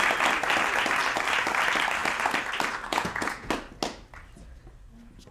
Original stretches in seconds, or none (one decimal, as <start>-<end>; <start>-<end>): 0.0-2.9; 3.5-5.3